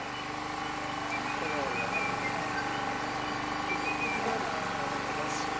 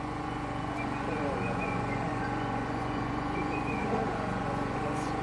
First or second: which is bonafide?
first